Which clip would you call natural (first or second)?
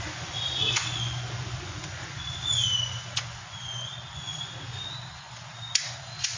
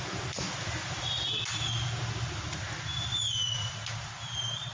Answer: second